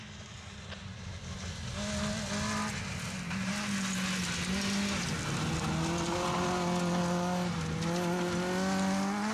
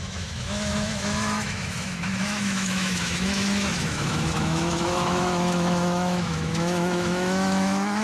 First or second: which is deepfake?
second